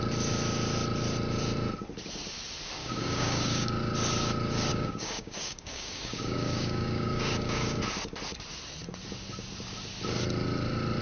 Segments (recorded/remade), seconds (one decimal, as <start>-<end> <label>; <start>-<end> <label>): 0.0-2.8 recorded; 2.8-3.7 remade; 3.7-4.7 recorded; 4.7-7.8 remade; 7.8-11.0 recorded

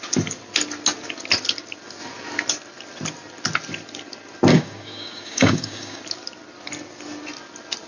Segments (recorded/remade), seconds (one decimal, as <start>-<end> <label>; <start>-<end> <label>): 0.0-4.5 recorded; 4.5-6.0 remade; 6.0-7.9 recorded

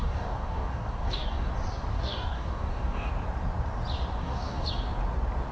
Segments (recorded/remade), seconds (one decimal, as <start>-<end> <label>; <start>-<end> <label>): 0.0-1.5 remade; 1.5-1.9 recorded; 1.9-3.1 remade; 3.1-4.2 recorded; 4.2-4.7 remade; 4.7-5.5 recorded

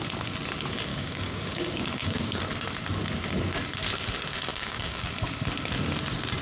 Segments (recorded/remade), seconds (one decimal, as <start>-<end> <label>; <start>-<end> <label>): 0.0-0.9 recorded; 0.9-2.4 remade; 2.4-4.5 recorded; 4.5-5.1 remade; 5.1-6.4 recorded

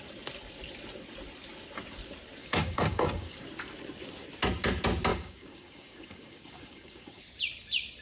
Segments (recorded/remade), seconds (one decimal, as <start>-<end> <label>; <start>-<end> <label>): 0.0-2.4 recorded; 2.4-3.4 remade; 3.4-5.1 recorded; 5.1-7.2 remade; 7.2-8.0 recorded